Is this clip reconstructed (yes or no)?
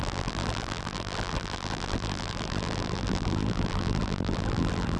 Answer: yes